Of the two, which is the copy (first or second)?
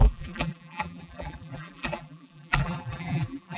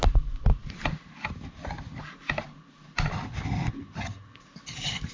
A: first